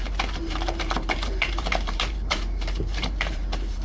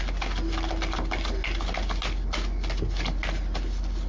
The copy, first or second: first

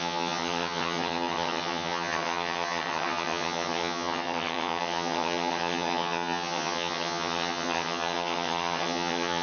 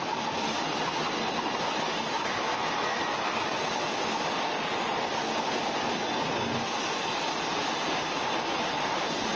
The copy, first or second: first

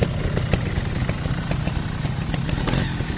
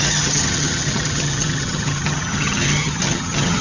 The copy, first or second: second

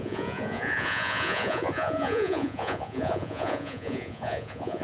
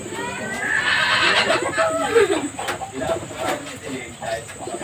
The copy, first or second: first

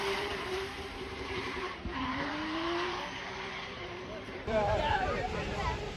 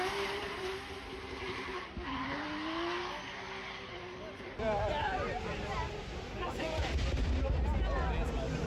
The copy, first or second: first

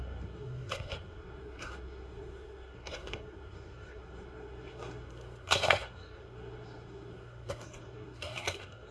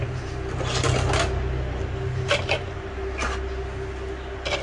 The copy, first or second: first